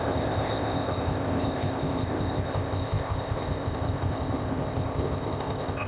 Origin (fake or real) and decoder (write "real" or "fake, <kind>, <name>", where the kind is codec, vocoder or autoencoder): fake, codec, ZipCodec